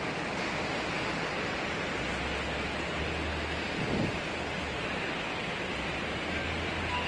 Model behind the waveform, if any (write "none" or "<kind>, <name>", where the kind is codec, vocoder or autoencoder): none